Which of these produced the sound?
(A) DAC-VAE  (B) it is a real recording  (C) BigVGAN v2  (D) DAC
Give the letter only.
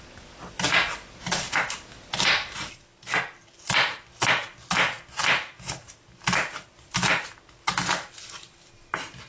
B